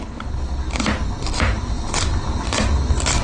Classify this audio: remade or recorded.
recorded